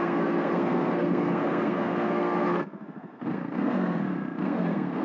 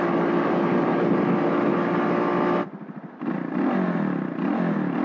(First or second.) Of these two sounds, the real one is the second